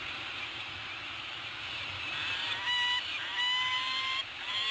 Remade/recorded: recorded